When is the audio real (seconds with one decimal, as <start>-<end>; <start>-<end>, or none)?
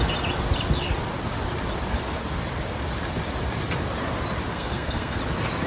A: 0.0-4.5; 5.2-5.7